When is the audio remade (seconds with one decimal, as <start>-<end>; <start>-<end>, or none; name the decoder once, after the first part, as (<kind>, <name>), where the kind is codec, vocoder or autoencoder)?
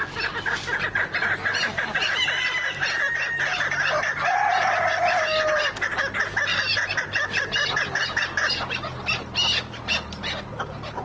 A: 1.5-5.9 (vocoder, BigVGAN v2); 6.5-7.8